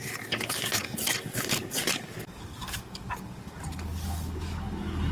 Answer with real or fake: fake